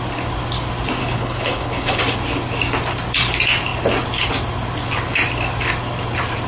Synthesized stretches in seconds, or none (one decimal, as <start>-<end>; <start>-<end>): 1.0-2.0